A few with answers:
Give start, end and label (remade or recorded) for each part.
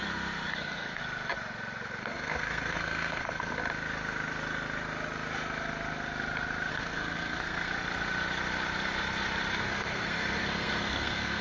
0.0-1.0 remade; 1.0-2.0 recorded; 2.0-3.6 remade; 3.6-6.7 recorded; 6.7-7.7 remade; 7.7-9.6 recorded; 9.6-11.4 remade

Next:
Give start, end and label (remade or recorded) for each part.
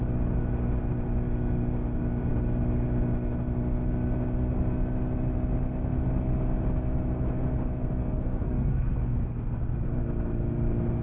0.0-8.0 recorded; 8.0-9.3 remade; 9.3-11.0 recorded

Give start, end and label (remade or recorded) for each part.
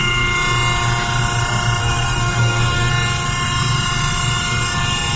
0.0-1.8 recorded; 1.8-2.9 remade; 2.9-5.2 recorded